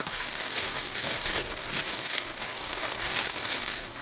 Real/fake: fake